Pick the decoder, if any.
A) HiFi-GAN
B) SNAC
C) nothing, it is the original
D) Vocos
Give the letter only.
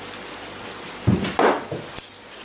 C